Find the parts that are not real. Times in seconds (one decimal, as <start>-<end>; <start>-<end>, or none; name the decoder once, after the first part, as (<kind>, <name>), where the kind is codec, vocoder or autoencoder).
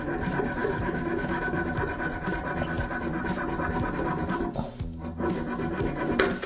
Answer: 0.6-1.7 (autoencoder, DAC-VAE)